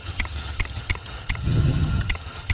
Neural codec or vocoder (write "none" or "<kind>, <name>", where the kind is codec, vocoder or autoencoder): vocoder, HiFi-GAN